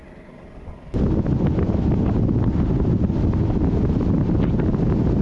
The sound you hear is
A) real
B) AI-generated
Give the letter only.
A